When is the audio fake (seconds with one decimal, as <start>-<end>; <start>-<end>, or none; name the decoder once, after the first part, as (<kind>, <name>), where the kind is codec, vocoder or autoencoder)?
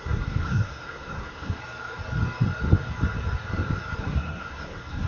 0.0-1.6 (codec, SNAC); 4.0-5.1